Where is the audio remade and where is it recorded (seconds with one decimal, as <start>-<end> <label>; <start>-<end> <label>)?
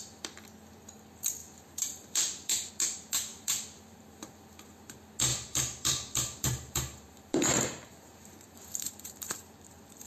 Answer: 0.0-1.4 recorded; 1.4-2.7 remade; 2.7-3.3 recorded; 3.3-4.4 remade; 4.4-5.3 recorded; 5.3-10.1 remade